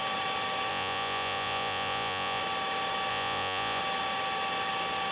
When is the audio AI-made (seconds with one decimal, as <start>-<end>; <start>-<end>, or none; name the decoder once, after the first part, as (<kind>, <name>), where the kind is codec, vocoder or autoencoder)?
0.7-2.4 (vocoder, Vocos); 3.1-3.8